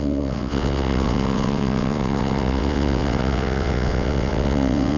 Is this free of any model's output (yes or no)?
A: no